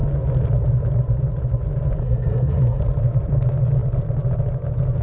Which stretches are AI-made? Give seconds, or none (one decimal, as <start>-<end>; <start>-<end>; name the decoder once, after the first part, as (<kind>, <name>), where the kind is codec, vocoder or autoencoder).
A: 2.0-2.8 (codec, SNAC)